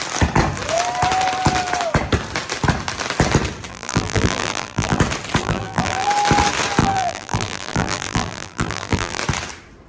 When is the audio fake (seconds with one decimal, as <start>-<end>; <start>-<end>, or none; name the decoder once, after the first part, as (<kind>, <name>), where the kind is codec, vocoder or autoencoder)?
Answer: 3.7-5.0 (vocoder, BigVGAN v2); 5.4-6.1; 6.8-9.2